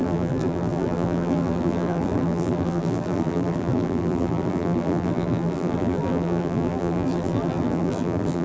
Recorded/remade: remade